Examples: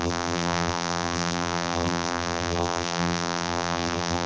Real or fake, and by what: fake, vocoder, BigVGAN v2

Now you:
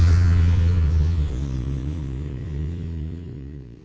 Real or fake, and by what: fake, vocoder, Vocos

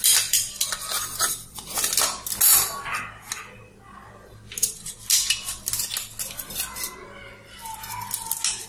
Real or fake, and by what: real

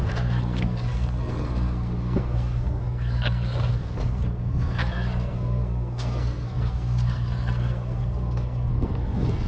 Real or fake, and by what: fake, codec, SNAC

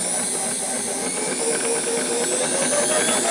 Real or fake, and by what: real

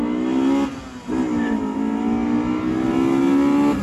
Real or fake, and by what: real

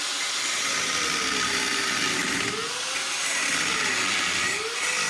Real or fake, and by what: real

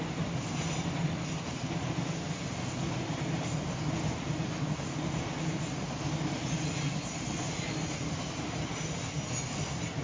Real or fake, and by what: real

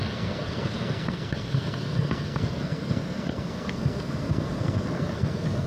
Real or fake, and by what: fake, codec, SNAC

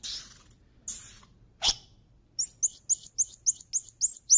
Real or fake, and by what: real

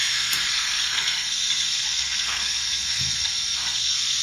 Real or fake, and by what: fake, codec, SNAC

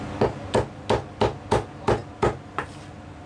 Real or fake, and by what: real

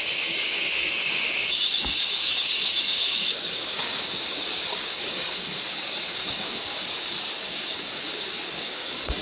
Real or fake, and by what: fake, codec, DAC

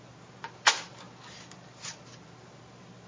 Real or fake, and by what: real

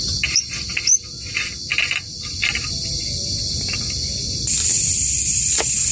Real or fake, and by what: real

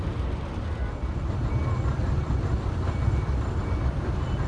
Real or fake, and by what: fake, vocoder, BigVGAN v2